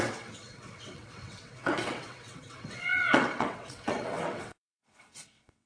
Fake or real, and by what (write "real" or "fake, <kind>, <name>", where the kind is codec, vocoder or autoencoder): fake, vocoder, WaveNeXt